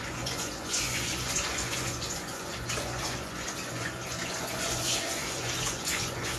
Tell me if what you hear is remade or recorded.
remade